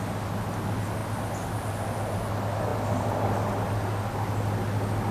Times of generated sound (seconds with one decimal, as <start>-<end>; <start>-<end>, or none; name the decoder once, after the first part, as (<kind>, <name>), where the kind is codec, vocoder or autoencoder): none